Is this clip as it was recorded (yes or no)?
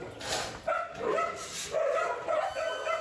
yes